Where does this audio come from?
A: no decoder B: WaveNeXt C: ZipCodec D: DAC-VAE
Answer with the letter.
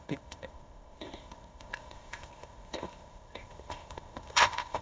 C